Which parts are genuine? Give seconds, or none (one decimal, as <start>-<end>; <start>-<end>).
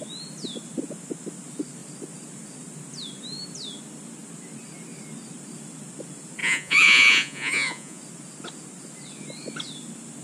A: 0.0-6.4; 8.0-10.2